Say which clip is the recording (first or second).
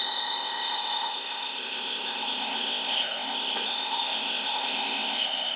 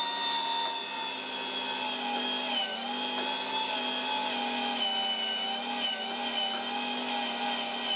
second